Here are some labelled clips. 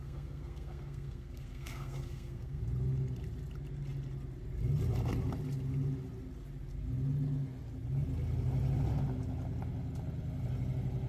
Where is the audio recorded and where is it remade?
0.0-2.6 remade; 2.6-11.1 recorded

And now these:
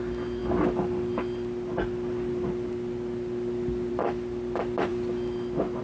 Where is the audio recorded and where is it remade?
0.0-5.8 recorded

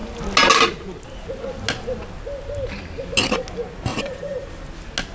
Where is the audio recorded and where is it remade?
0.0-3.9 recorded; 3.9-4.5 remade; 4.5-5.1 recorded

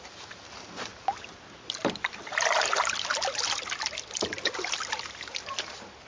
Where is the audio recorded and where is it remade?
0.0-6.1 recorded